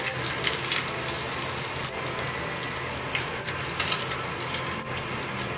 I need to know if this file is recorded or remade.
recorded